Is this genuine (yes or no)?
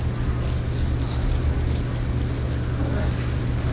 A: yes